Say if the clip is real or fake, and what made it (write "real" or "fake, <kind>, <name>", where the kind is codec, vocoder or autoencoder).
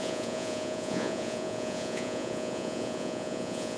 fake, vocoder, Vocos